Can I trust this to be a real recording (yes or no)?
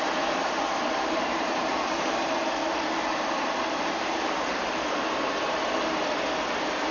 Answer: no